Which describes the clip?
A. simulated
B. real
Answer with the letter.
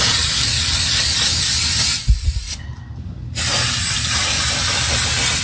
B